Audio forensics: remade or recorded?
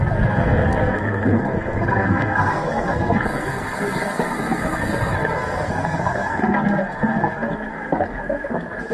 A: remade